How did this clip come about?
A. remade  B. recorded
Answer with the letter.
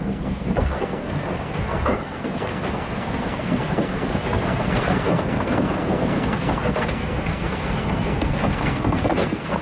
A